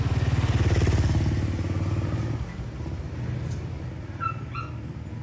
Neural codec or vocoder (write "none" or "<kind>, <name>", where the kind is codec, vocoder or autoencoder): none